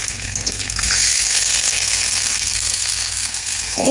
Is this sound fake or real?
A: fake